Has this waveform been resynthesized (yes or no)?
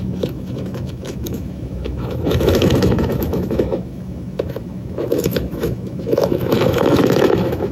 yes